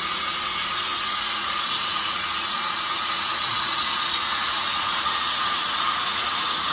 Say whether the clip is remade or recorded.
remade